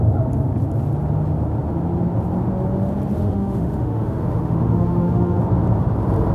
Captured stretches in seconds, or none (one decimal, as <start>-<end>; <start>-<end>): 0.0-3.2; 5.4-6.3